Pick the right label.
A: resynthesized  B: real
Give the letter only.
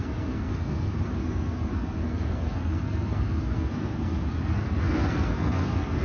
A